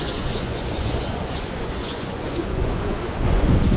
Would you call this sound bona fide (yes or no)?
no